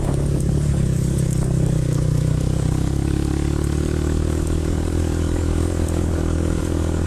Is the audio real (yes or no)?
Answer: no